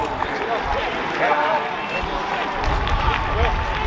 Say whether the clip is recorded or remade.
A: recorded